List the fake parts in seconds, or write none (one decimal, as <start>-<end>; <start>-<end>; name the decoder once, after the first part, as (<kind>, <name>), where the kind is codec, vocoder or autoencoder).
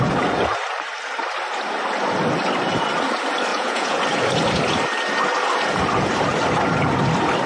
3.5-4.0 (vocoder, Vocos)